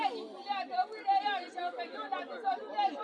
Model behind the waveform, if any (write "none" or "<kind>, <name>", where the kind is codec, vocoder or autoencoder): none